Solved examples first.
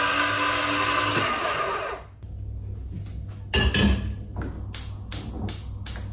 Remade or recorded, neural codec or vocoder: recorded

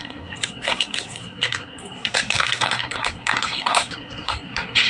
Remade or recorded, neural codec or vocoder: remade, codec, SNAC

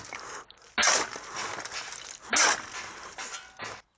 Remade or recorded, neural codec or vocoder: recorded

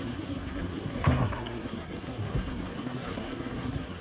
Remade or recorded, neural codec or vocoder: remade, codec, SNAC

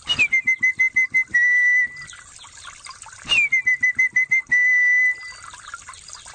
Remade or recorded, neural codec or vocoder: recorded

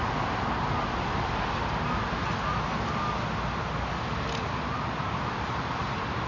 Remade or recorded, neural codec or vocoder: recorded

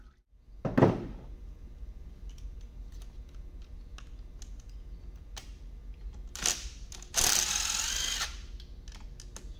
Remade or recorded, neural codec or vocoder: recorded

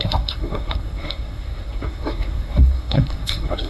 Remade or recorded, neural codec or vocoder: remade, codec, SNAC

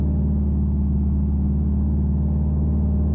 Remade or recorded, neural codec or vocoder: recorded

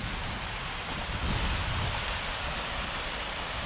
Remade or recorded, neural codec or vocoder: recorded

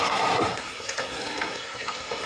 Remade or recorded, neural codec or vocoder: remade, codec, SNAC